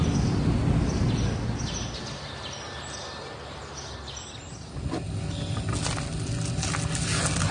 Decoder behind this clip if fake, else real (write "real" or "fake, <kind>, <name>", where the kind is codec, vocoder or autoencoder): real